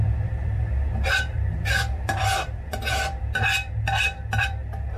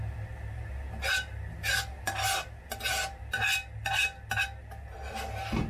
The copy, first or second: first